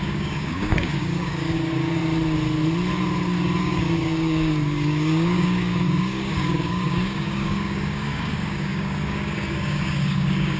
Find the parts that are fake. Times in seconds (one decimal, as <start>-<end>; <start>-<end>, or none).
0.0-2.0; 3.6-10.6